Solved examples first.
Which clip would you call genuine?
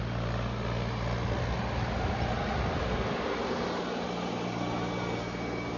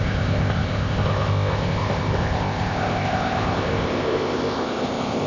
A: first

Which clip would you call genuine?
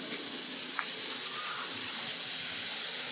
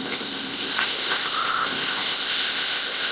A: first